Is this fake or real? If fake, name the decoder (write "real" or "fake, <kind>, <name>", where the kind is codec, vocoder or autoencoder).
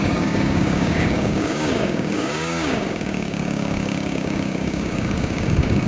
fake, codec, DAC